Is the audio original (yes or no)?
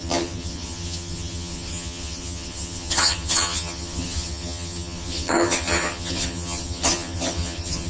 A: no